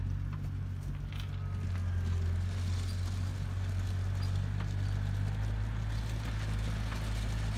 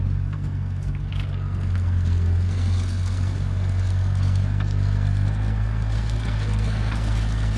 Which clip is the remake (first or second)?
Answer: second